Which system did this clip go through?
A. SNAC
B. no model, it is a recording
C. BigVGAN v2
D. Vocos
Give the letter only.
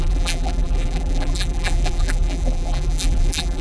C